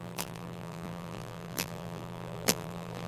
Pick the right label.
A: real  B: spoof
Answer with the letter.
B